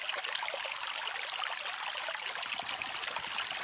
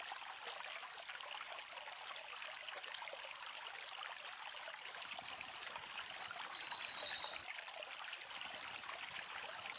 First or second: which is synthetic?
second